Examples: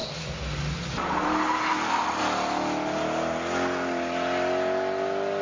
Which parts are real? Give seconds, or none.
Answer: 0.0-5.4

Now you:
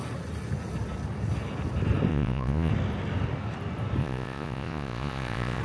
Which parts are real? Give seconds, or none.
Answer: 0.0-2.1; 2.7-4.0

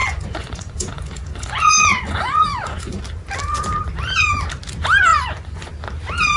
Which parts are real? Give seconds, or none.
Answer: 3.0-5.1; 5.7-6.4

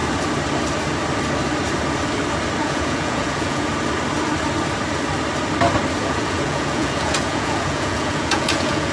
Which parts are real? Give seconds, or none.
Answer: 0.0-2.6; 3.7-6.0

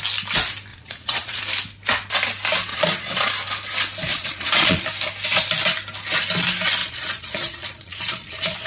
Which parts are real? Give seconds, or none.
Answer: 0.0-0.7; 1.4-2.7; 3.3-4.1; 4.8-6.8

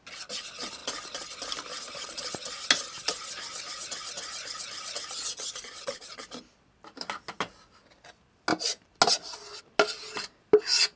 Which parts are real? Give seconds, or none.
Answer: 0.0-11.0

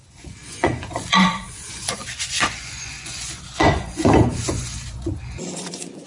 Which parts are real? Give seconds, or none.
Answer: none

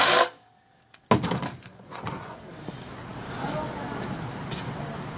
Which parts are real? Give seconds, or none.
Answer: 0.0-1.7; 2.4-5.2